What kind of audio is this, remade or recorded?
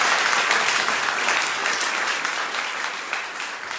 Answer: recorded